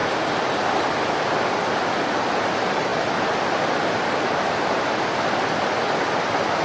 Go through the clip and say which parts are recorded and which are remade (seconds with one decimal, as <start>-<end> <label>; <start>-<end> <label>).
0.0-6.6 recorded